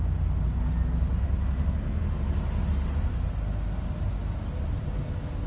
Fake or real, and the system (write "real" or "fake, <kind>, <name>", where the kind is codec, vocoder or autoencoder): real